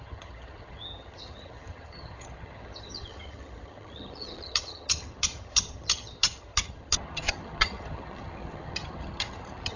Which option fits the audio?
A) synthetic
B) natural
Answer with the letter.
A